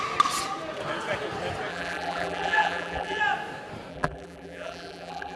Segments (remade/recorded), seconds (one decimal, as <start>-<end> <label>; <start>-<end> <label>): 0.0-1.7 recorded; 1.7-3.2 remade; 3.2-3.9 recorded; 3.9-5.4 remade